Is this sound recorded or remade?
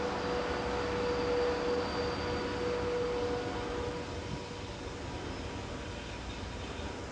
recorded